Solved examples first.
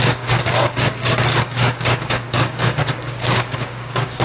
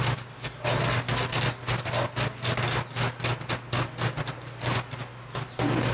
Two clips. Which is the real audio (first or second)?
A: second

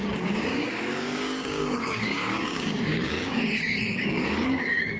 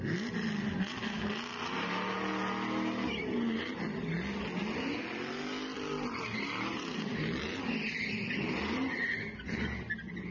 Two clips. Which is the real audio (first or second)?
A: second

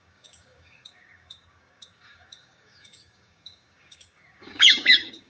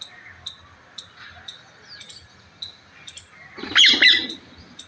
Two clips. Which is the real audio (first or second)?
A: second